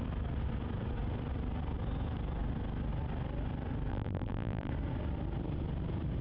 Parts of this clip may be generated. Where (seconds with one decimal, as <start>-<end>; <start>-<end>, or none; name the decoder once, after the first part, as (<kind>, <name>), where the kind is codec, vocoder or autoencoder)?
3.9-4.7 (vocoder, BigVGAN v2)